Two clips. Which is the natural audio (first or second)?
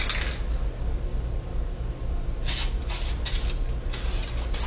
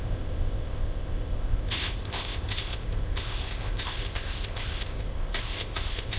first